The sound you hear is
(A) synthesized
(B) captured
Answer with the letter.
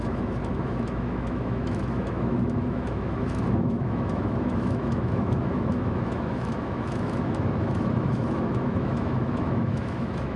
A